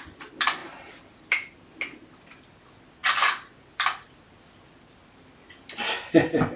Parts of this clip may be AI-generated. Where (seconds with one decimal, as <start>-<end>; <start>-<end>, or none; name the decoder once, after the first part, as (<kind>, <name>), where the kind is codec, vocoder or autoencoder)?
3.0-5.4 (vocoder, BigVGAN v2)